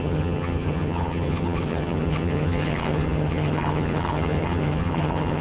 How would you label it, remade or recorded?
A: remade